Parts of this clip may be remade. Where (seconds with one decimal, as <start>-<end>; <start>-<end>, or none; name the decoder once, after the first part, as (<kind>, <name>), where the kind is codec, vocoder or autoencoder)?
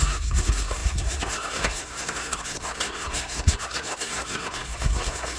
0.0-5.4 (codec, SNAC)